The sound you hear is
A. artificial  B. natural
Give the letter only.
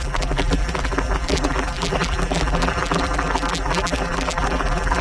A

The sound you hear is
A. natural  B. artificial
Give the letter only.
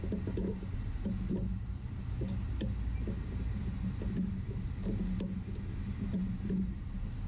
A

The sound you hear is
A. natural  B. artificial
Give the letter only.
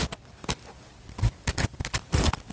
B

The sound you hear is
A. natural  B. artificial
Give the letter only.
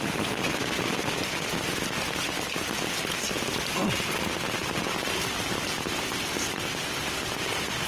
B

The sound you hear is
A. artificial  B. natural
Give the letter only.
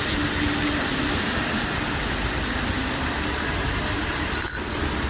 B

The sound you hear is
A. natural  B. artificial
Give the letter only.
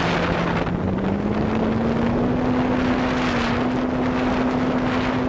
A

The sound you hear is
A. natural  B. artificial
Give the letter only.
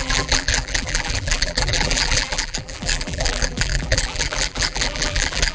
B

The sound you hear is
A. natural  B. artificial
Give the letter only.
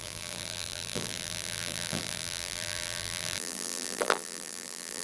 B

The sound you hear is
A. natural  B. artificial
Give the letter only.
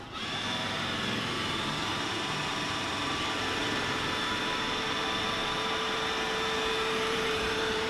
B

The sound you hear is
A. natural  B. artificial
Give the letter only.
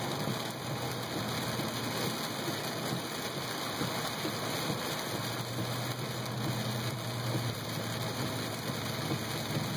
A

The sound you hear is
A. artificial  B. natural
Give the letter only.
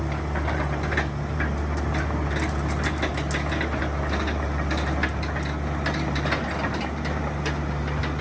B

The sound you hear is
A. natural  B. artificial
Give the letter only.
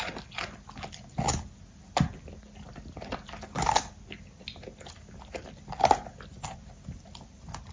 A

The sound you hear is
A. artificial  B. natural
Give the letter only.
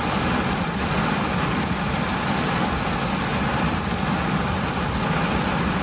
B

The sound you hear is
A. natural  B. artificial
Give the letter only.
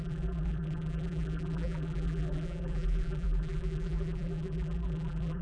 B